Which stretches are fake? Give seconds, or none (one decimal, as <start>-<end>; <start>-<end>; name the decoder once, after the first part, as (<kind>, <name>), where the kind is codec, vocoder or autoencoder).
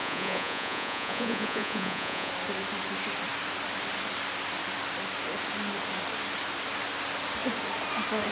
0.0-2.3 (vocoder, Vocos)